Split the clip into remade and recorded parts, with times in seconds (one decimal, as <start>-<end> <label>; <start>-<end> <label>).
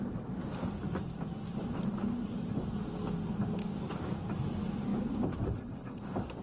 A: 0.0-3.6 recorded; 3.6-4.2 remade; 4.2-6.4 recorded